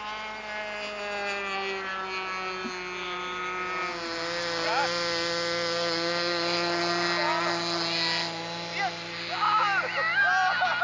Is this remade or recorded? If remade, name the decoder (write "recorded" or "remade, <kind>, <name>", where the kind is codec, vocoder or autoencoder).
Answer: recorded